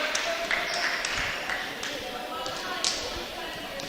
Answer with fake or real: real